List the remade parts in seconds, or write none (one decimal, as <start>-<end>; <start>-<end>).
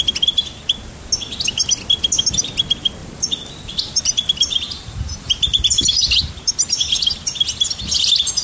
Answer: 3.0-5.6